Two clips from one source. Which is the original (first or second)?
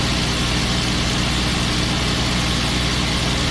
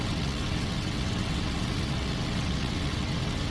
first